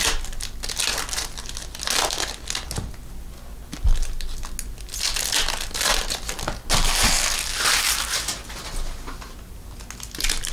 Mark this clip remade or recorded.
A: recorded